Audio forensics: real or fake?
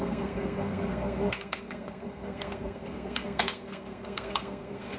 fake